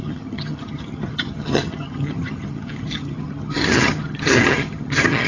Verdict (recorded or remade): remade